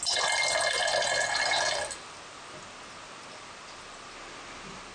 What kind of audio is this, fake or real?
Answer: real